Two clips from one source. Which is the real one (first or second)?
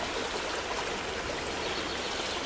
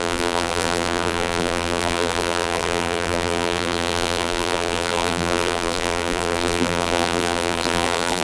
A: first